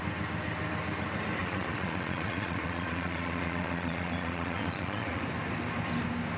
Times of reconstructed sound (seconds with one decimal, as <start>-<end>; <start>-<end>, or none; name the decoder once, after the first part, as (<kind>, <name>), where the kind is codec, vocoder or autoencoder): 1.4-5.2 (vocoder, Vocos)